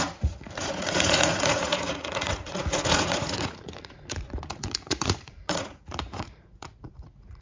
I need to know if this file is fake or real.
fake